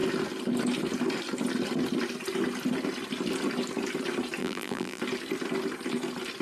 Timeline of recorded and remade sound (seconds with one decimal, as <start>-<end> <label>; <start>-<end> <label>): 0.0-4.4 recorded; 4.4-5.0 remade; 5.0-6.4 recorded